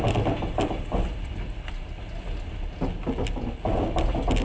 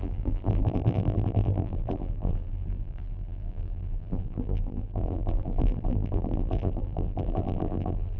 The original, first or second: first